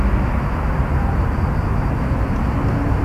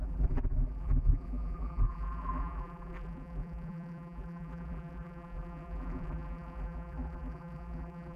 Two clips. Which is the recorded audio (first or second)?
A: first